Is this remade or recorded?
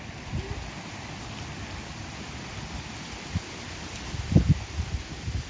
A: recorded